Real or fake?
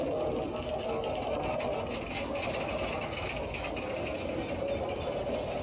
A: real